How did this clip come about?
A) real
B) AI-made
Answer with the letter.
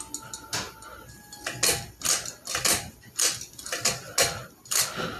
A